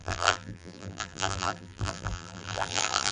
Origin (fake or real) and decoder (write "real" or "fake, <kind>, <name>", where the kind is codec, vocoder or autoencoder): fake, vocoder, BigVGAN v2